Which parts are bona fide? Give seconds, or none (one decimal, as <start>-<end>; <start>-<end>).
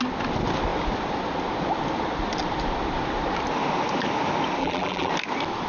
0.0-4.6; 5.1-5.7